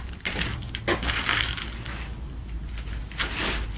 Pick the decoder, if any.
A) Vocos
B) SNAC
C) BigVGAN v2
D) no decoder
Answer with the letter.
D